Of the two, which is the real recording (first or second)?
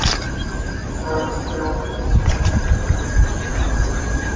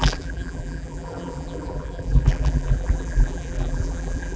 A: first